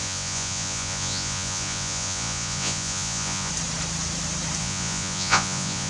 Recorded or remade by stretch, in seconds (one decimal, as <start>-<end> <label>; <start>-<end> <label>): 0.0-3.5 remade; 3.5-4.6 recorded; 4.6-5.9 remade